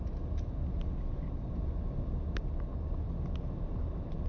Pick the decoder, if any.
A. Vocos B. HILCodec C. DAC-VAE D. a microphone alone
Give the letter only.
D